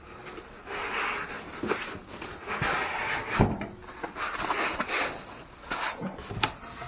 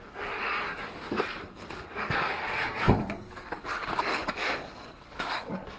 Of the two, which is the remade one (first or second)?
second